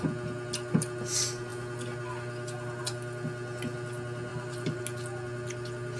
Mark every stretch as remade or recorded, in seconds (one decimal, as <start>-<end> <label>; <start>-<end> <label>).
0.0-4.3 recorded; 4.3-4.8 remade; 4.8-6.0 recorded